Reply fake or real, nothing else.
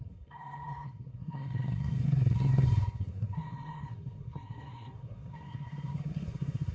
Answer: fake